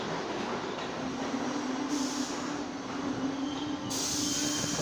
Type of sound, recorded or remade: recorded